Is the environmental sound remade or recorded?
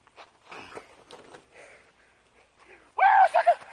recorded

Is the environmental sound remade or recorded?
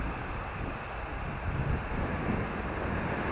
recorded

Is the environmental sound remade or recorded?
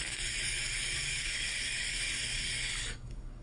remade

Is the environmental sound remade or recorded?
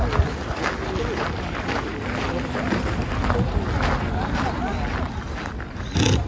recorded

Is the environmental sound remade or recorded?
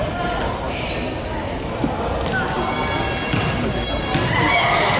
recorded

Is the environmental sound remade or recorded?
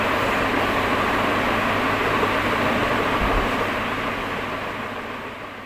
recorded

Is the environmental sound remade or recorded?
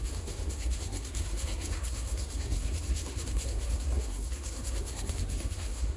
remade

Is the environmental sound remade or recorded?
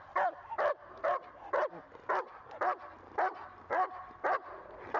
recorded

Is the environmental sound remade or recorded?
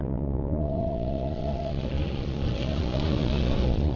remade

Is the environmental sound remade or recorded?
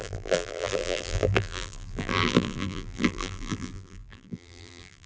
remade